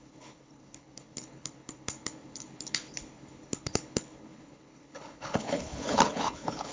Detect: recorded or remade remade